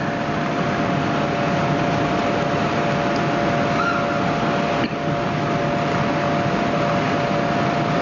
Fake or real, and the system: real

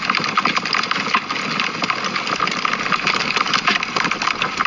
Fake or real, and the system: real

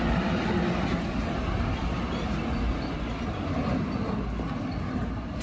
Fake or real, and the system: real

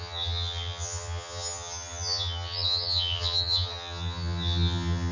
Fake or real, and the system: fake, vocoder, HiFi-GAN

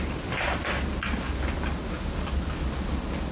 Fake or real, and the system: real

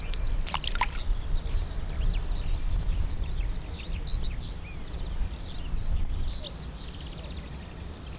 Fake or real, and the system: real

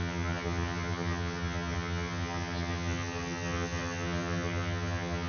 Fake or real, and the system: fake, vocoder, HiFi-GAN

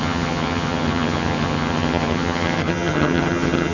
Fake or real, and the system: fake, vocoder, HiFi-GAN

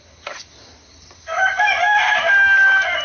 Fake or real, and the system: real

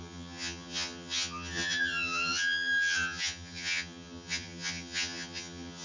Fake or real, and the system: fake, vocoder, HiFi-GAN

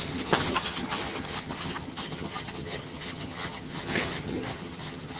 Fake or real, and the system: fake, vocoder, HiFi-GAN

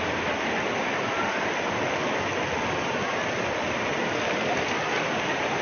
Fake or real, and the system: real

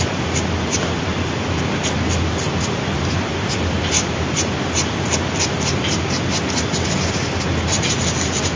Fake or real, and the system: real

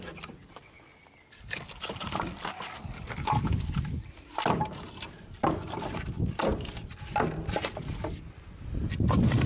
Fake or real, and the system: real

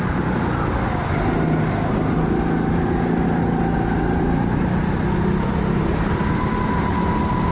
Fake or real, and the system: real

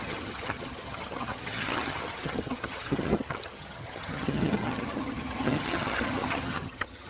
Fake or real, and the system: fake, vocoder, HiFi-GAN